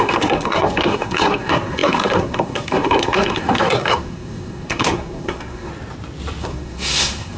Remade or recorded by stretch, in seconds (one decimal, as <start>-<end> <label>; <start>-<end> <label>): 0.0-5.7 remade; 5.7-6.4 recorded; 6.4-7.4 remade